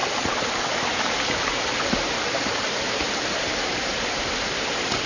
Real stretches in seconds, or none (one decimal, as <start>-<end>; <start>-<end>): 0.0-5.1